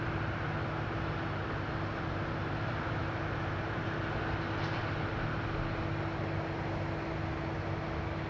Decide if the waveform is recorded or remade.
recorded